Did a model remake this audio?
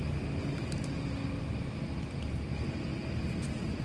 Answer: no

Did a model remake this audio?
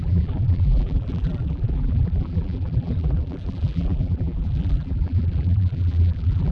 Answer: yes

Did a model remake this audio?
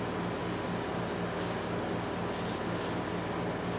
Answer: no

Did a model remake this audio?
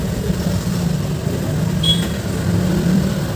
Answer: yes